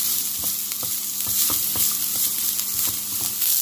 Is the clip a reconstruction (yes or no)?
no